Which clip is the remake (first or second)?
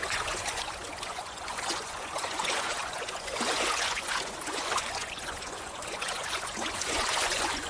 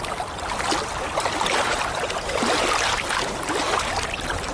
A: first